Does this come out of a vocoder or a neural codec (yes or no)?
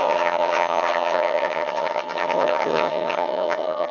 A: yes